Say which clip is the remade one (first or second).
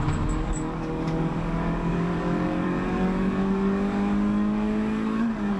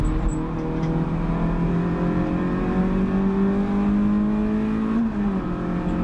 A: first